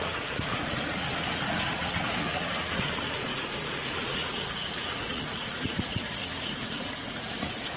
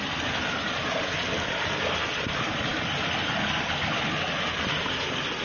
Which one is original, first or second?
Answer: second